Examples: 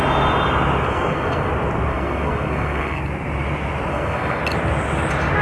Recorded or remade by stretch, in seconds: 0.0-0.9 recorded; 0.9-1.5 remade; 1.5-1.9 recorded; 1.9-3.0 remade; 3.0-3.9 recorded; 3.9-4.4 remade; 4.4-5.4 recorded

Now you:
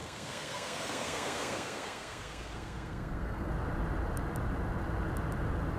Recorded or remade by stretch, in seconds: 0.0-3.5 remade; 3.5-5.8 recorded

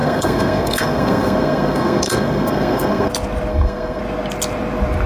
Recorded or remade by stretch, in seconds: 0.0-3.1 remade; 3.1-3.5 recorded; 3.5-4.0 remade; 4.0-5.1 recorded

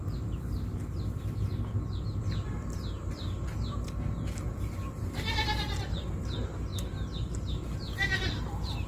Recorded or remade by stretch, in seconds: 0.0-8.9 recorded

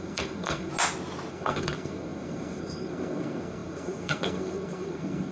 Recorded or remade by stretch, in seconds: 0.0-0.7 remade; 0.7-1.3 recorded; 1.3-5.3 remade

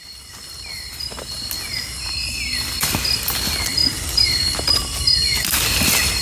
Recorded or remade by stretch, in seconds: 0.0-6.2 recorded